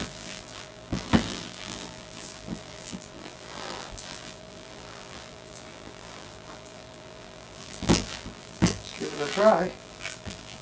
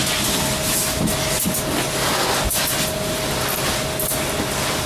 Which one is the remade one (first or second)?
first